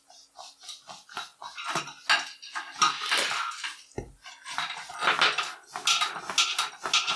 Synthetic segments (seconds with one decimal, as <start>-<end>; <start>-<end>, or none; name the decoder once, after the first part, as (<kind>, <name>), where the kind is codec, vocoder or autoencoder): none